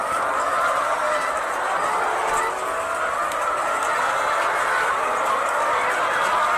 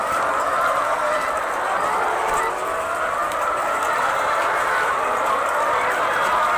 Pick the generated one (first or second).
second